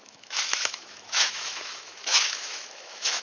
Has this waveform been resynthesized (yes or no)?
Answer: yes